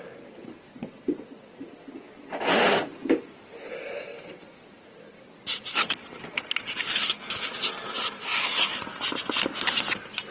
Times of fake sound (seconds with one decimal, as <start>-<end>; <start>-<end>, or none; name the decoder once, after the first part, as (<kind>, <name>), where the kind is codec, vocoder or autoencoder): 0.7-1.5 (vocoder, WaveNeXt)